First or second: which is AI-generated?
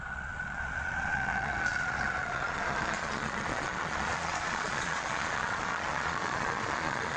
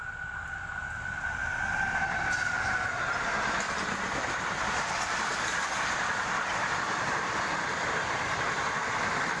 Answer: first